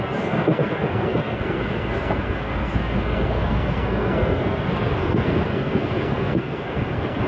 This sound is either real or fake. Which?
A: fake